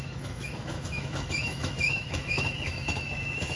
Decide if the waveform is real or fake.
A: fake